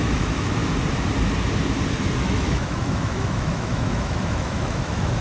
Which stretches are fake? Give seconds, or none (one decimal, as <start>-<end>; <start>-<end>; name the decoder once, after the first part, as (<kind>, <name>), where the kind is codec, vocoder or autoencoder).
0.0-0.6 (autoencoder, DAC-VAE); 2.2-5.2